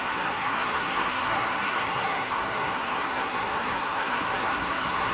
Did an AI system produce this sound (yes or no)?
yes